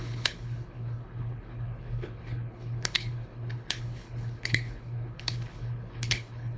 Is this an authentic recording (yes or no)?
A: no